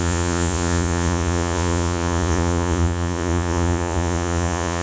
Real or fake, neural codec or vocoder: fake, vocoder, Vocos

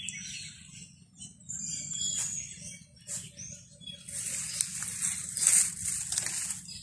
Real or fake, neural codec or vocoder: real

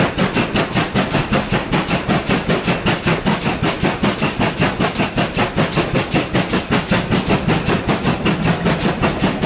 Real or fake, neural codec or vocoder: real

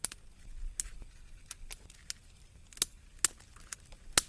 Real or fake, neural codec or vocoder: real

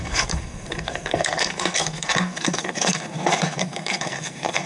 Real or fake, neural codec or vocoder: fake, codec, SNAC